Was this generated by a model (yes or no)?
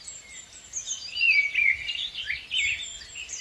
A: yes